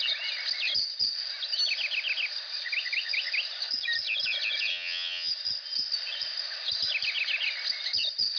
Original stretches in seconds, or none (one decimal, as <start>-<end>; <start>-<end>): 0.0-4.7; 5.3-8.4